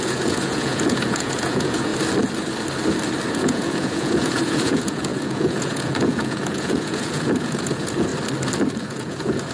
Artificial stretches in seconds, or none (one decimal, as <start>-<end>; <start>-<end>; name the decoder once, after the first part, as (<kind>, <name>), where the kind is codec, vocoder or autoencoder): 0.0-1.9 (vocoder, Vocos); 3.3-8.1; 8.8-9.5

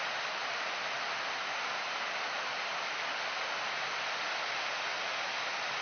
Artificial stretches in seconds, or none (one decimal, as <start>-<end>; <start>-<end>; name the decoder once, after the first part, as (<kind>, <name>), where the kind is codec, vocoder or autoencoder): none

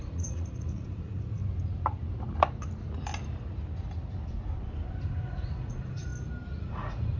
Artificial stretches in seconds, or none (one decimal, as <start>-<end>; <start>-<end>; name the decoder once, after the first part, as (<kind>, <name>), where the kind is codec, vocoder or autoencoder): 0.0-1.4 (vocoder, Vocos); 5.0-6.1; 6.6-7.2

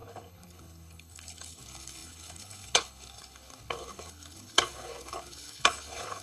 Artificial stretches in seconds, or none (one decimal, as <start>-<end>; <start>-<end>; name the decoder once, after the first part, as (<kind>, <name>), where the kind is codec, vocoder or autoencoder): 0.0-6.2 (codec, HILCodec)